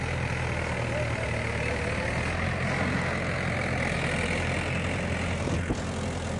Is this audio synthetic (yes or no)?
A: no